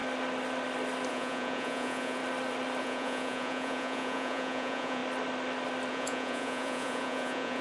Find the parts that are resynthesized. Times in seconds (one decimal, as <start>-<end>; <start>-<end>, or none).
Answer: 1.1-2.2; 2.8-5.0; 5.9-7.6